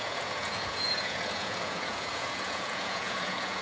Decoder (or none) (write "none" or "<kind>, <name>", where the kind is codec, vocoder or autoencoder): vocoder, Vocos